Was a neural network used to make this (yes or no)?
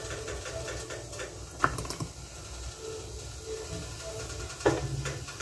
no